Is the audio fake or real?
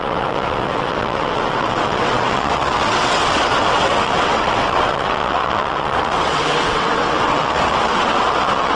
fake